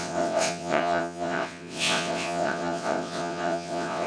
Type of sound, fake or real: fake